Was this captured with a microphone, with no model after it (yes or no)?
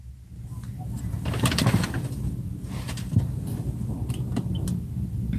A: yes